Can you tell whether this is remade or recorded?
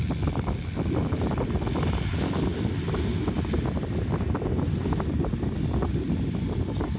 recorded